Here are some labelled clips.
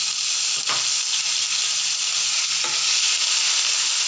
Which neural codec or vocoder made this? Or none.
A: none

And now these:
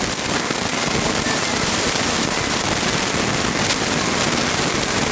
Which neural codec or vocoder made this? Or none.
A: none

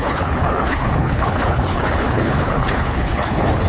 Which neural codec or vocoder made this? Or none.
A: codec, HILCodec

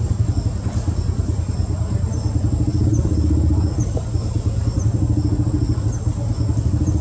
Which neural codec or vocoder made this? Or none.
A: none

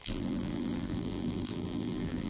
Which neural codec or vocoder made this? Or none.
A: vocoder, BigVGAN v2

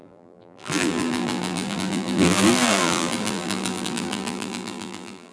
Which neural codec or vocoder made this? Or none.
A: vocoder, BigVGAN v2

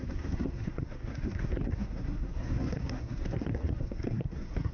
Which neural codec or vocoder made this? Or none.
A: codec, SNAC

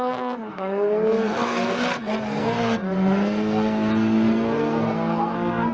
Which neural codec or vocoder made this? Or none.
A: codec, SNAC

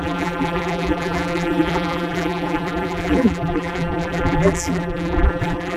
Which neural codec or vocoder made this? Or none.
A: vocoder, BigVGAN v2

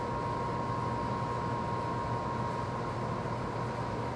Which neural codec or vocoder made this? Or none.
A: none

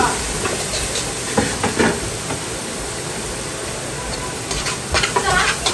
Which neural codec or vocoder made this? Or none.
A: vocoder, BigVGAN v2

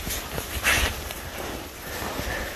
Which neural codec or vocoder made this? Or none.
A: none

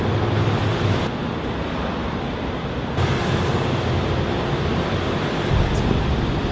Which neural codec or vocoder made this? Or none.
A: none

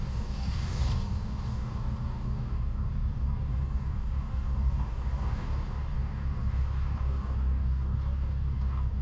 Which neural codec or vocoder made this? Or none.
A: codec, DAC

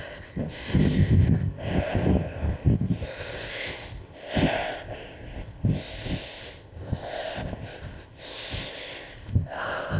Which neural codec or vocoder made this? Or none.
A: codec, ZipCodec